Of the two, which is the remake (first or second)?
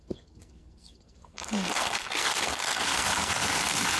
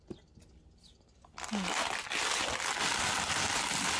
first